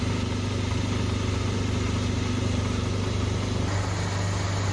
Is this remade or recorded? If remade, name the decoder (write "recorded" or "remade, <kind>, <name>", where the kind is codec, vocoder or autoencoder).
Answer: recorded